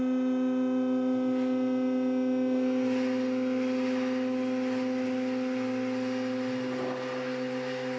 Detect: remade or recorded recorded